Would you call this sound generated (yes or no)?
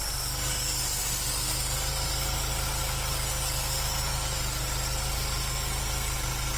no